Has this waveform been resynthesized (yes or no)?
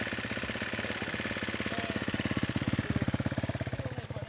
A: no